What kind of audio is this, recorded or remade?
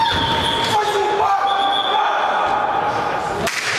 recorded